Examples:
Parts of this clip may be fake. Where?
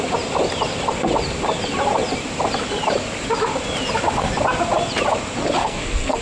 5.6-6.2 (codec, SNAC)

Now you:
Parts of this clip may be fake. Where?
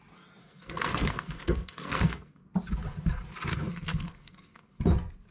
0.4-2.4 (codec, SNAC); 3.5-4.8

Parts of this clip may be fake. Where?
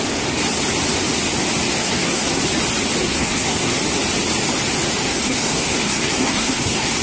1.8-2.4 (codec, SNAC); 3.0-3.8; 5.0-7.0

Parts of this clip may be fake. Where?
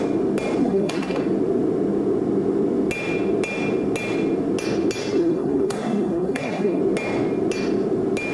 0.6-1.2 (codec, SNAC); 5.0-6.8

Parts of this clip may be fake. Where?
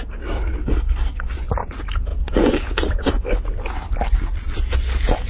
0.6-1.3 (codec, SNAC)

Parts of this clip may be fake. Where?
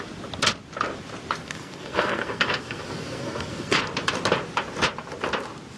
1.4-3.8 (codec, SNAC)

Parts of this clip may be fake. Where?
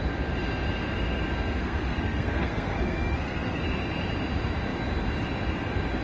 1.6-3.6 (codec, SNAC)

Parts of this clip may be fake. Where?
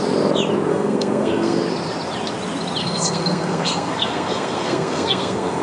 0.7-1.6 (codec, SNAC); 2.8-5.6